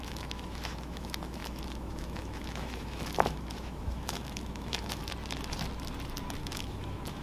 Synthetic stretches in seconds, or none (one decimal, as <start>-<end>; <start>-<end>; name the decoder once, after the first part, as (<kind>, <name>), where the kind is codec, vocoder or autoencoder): 0.0-5.0 (autoencoder, DAC-VAE); 6.5-7.2